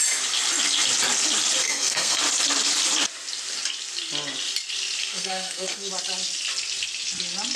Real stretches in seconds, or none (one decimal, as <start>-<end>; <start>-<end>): 0.0-1.6; 2.2-5.0; 5.9-7.6